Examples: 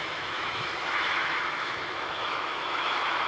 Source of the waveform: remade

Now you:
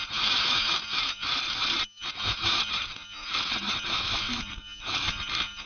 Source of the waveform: remade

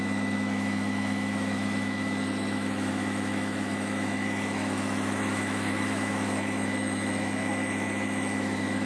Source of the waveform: remade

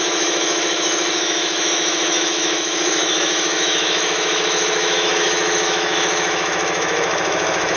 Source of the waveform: remade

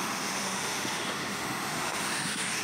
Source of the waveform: remade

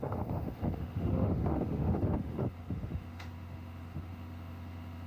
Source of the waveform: remade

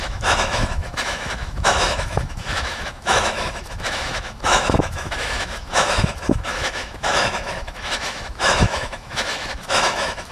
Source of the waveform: remade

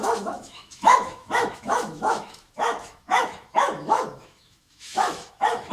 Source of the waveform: remade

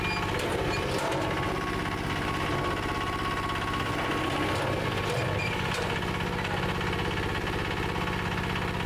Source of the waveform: recorded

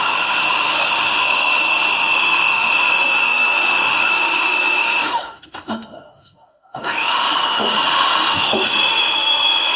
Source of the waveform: remade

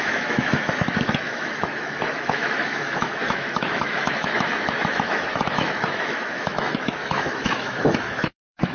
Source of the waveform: remade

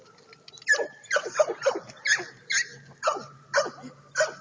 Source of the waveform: recorded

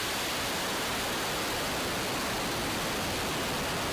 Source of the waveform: recorded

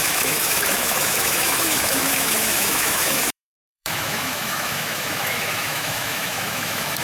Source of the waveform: remade